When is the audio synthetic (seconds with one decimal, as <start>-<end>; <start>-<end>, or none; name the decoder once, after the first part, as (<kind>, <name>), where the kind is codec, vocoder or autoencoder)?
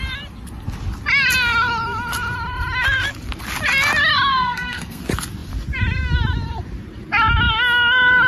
4.3-5.0 (codec, SNAC)